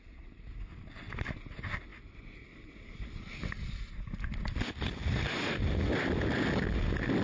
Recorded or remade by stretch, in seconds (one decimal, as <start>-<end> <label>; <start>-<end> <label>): 0.0-7.2 recorded